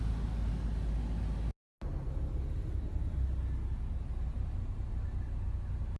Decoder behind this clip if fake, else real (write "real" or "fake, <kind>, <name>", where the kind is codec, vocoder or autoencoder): real